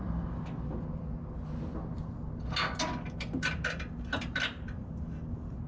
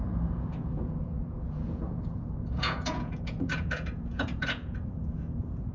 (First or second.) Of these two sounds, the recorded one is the first